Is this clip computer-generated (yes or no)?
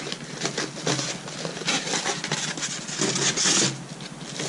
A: no